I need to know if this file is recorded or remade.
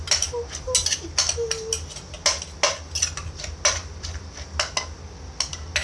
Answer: recorded